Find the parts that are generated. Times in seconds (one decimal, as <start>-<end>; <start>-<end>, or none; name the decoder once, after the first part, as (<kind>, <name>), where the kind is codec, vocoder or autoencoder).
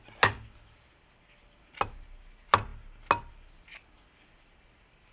none